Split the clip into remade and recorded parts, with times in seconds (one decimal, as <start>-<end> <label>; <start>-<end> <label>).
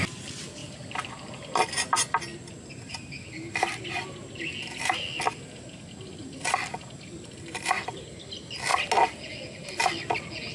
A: 0.0-10.5 recorded